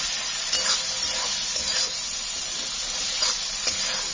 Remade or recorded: recorded